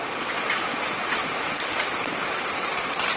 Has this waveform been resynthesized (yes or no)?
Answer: yes